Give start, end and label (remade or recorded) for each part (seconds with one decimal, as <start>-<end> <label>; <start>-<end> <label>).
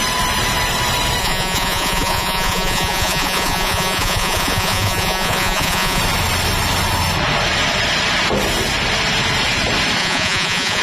0.0-1.2 recorded; 1.2-6.0 remade; 6.0-10.0 recorded; 10.0-10.8 remade